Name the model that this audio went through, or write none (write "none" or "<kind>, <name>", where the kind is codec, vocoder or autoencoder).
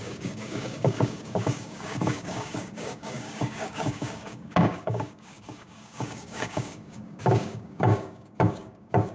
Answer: codec, DAC